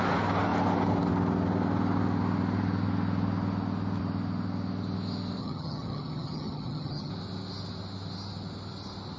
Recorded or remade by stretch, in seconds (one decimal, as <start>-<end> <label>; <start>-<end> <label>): 0.0-5.4 recorded; 5.4-7.1 remade; 7.1-9.2 recorded